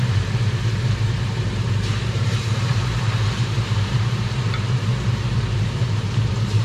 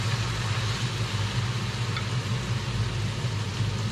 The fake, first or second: first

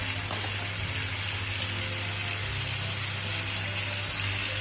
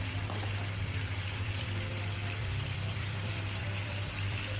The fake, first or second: second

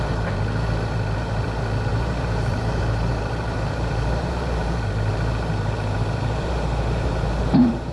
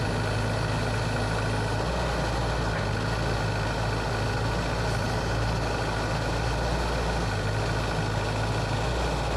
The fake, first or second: first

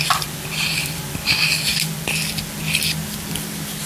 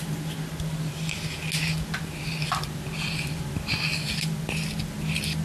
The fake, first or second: first